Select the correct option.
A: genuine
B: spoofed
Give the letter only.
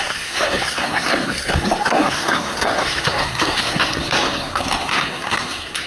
B